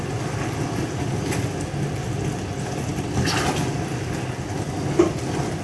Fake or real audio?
real